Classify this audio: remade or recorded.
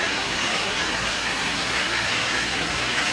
remade